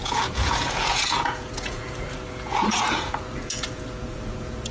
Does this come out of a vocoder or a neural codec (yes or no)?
yes